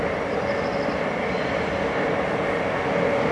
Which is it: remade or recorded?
recorded